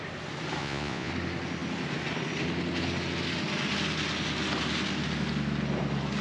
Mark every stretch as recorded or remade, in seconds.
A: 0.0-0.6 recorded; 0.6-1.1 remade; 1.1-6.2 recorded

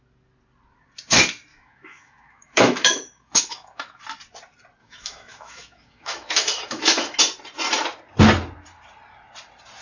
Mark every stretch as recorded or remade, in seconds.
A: 0.0-1.5 recorded; 1.5-4.0 remade; 4.0-4.8 recorded; 4.8-7.2 remade; 7.2-9.8 recorded

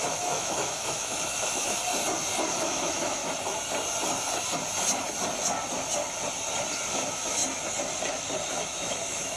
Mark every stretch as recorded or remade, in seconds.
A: 0.0-1.8 remade; 1.8-2.5 recorded; 2.5-3.2 remade; 3.2-6.9 recorded; 6.9-7.4 remade; 7.4-8.5 recorded; 8.5-9.4 remade